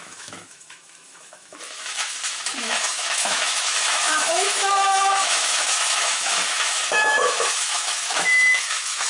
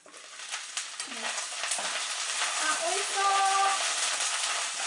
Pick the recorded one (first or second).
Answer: second